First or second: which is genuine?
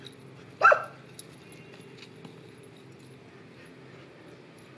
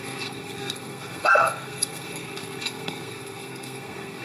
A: first